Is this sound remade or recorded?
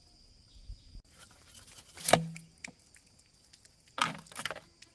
recorded